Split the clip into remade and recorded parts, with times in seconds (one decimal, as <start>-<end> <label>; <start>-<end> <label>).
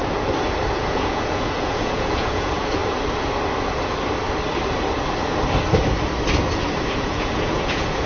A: 0.0-0.7 recorded; 0.7-2.8 remade; 2.8-7.0 recorded; 7.0-8.1 remade